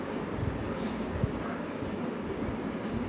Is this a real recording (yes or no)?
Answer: no